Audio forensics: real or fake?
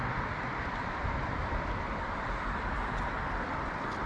fake